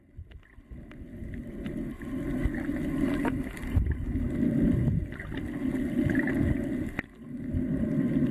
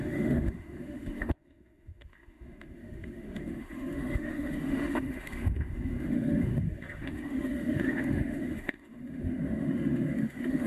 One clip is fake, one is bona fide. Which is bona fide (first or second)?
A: first